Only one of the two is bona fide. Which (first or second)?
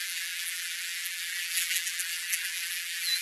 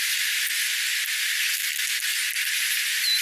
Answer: second